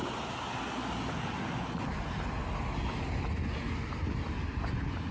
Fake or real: real